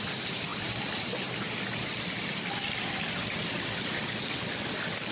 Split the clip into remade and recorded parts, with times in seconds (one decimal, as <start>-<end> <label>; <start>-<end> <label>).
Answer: 0.0-5.1 recorded